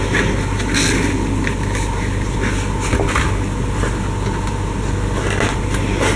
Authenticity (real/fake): real